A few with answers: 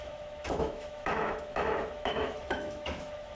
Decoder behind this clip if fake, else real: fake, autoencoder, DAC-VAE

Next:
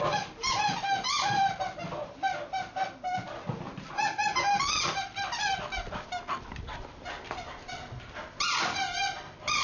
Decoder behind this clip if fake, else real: fake, vocoder, BigVGAN v2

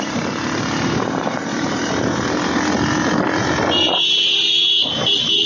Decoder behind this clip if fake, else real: fake, vocoder, BigVGAN v2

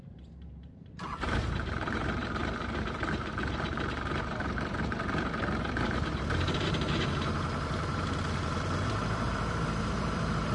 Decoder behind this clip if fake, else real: fake, vocoder, BigVGAN v2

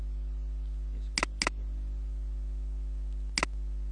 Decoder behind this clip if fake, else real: real